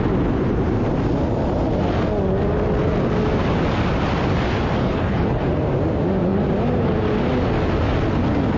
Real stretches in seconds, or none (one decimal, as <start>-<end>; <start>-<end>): 0.0-4.8; 5.4-8.6